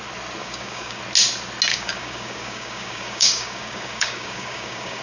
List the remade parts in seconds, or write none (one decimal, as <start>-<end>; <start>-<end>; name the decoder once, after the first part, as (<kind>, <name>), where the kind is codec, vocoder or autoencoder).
0.4-1.0 (codec, DAC); 1.7-5.0